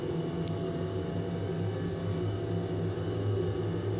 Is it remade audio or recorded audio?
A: recorded